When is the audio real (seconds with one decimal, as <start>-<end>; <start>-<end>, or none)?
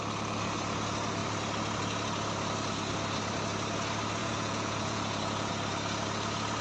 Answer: 0.0-4.2; 5.5-6.6